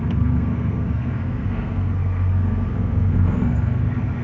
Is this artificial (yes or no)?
yes